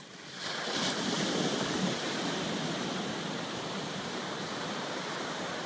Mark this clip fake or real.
real